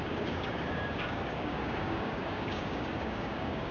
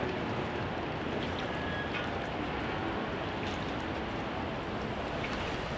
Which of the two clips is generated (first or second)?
first